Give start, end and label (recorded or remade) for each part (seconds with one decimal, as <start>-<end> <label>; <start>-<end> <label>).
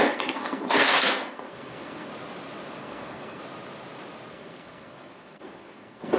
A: 0.0-2.1 remade; 2.1-2.8 recorded; 2.8-3.4 remade; 3.4-4.3 recorded; 4.3-6.2 remade